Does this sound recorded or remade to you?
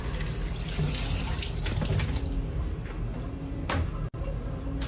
recorded